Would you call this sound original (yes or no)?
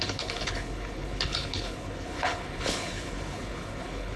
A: no